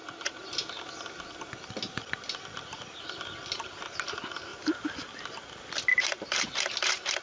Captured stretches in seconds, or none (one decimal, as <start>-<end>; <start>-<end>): 0.0-4.5; 5.1-5.9; 6.7-7.2